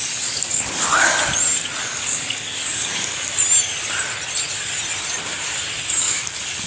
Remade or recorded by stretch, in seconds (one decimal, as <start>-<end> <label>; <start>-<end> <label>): 0.0-0.9 remade; 0.9-1.8 recorded; 1.8-3.3 remade; 3.3-6.0 recorded; 6.0-6.7 remade